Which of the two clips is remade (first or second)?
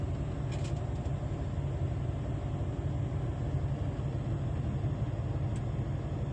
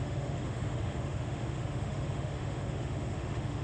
second